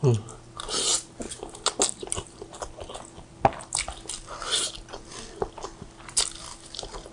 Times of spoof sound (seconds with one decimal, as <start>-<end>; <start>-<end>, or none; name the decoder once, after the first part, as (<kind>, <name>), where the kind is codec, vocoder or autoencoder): none